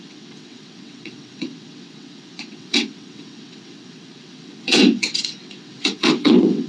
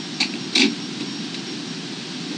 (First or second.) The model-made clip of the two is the first